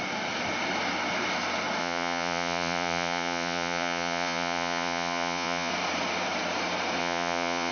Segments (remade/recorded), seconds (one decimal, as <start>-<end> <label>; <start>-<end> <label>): 0.0-1.8 recorded; 1.8-5.7 remade; 5.7-7.0 recorded; 7.0-7.7 remade